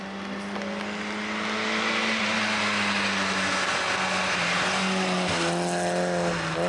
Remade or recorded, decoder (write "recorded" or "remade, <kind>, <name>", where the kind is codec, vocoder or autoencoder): recorded